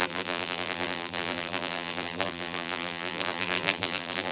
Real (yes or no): no